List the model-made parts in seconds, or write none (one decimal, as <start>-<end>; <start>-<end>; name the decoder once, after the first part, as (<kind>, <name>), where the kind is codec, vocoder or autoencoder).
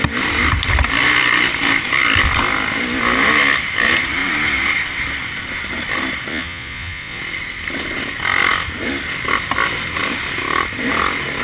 6.3-7.2 (vocoder, Vocos)